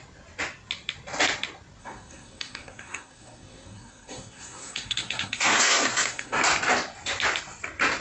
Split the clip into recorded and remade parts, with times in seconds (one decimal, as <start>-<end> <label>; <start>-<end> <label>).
0.0-1.8 recorded; 1.8-6.4 remade; 6.4-8.0 recorded